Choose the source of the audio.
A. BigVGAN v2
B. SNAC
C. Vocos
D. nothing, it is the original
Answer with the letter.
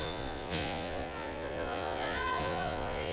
C